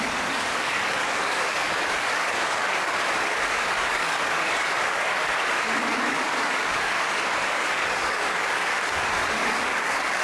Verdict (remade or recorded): remade